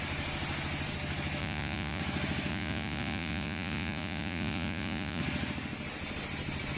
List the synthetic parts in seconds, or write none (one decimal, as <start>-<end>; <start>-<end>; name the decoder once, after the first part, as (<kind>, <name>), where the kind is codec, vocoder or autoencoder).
1.4-2.0 (vocoder, Vocos); 2.5-5.2